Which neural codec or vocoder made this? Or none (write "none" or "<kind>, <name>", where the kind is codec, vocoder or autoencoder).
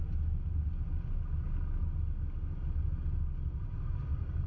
none